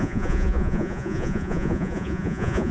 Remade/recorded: remade